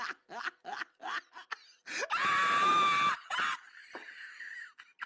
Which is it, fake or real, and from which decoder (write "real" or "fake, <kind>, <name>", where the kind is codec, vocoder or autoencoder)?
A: real